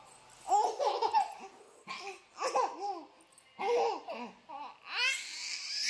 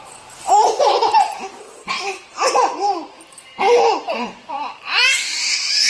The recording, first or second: first